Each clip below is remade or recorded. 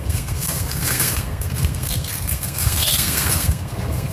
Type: remade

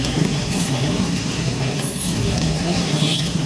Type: remade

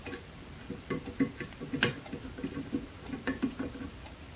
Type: recorded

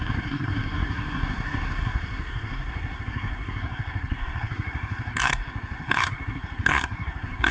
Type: remade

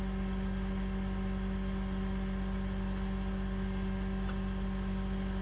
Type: recorded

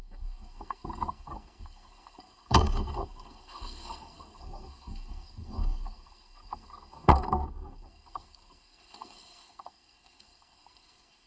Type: remade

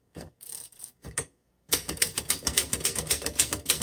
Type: remade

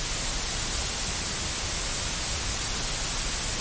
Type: recorded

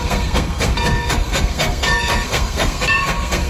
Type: remade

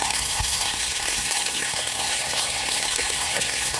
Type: remade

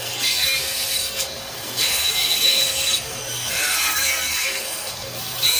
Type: remade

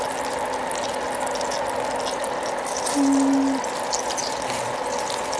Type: recorded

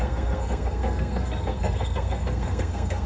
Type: remade